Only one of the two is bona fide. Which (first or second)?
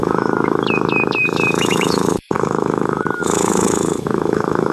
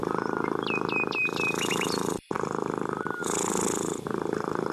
second